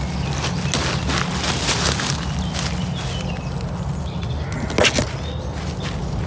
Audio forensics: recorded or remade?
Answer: recorded